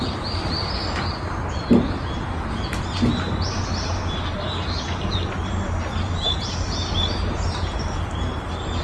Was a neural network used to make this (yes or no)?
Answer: no